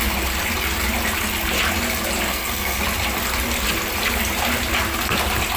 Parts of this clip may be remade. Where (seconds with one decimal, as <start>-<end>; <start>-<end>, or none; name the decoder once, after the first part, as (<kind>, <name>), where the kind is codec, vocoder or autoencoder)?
2.3-2.8 (codec, SNAC)